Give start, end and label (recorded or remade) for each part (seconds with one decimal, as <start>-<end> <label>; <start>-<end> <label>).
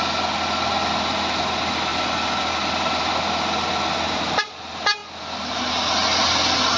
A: 0.0-6.8 recorded